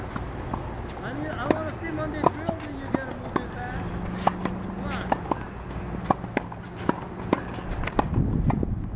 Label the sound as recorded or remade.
recorded